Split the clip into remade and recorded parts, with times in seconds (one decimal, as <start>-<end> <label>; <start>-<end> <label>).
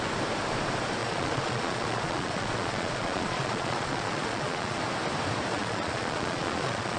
0.0-1.0 recorded; 1.0-4.8 remade; 4.8-5.5 recorded; 5.5-7.0 remade